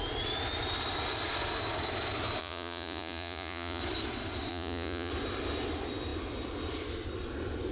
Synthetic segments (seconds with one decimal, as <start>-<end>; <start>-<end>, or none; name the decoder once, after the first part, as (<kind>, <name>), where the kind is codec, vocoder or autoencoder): 2.4-3.8 (vocoder, Vocos); 4.5-5.1